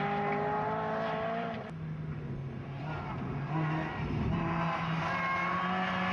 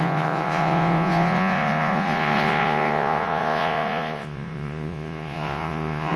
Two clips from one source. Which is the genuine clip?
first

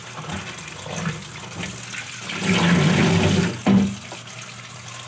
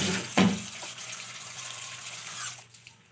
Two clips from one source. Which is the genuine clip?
first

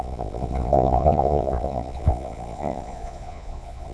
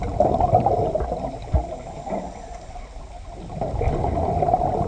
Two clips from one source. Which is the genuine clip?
second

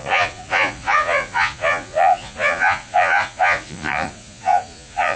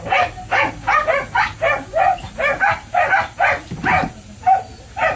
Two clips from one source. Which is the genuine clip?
second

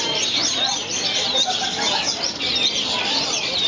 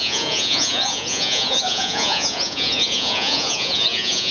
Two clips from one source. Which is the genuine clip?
first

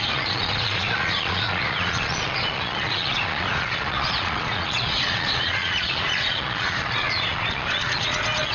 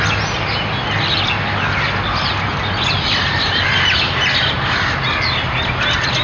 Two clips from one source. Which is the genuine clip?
second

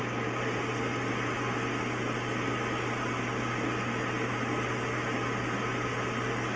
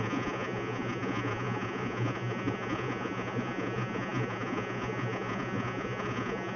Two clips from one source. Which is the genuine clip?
first